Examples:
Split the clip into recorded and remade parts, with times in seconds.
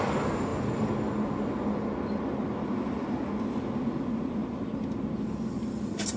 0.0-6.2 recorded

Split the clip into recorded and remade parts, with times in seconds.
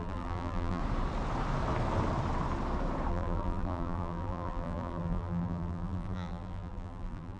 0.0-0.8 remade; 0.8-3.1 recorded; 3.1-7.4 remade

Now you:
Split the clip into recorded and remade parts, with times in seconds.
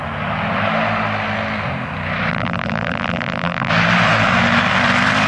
0.0-2.3 recorded; 2.3-3.7 remade; 3.7-5.3 recorded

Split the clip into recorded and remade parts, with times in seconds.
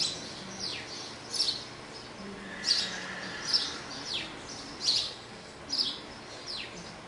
0.0-5.0 recorded; 5.0-5.6 remade; 5.6-7.1 recorded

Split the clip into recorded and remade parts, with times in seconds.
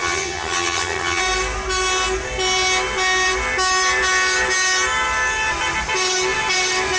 0.0-1.2 remade; 1.2-7.0 recorded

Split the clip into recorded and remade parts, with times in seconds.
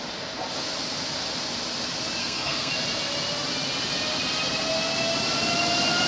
0.0-2.2 recorded; 2.2-2.7 remade; 2.7-6.1 recorded